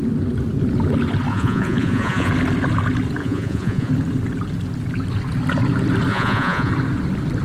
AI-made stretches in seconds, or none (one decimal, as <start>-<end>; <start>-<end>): 1.3-2.3; 3.2-3.9; 6.1-6.7